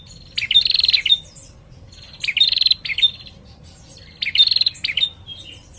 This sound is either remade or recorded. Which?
recorded